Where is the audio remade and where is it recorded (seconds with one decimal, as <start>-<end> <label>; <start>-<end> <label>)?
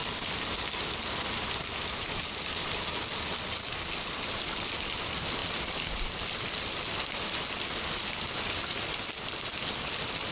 0.0-10.3 recorded